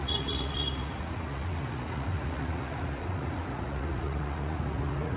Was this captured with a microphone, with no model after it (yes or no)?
no